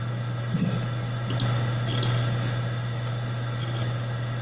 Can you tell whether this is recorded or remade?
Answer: recorded